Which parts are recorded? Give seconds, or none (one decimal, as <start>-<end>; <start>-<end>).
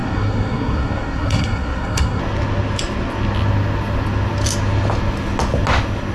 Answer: 2.2-6.1